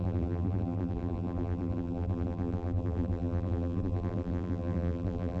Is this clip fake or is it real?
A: fake